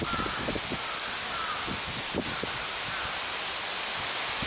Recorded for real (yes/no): yes